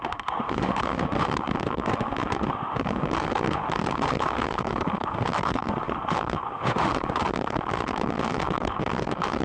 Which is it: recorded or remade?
remade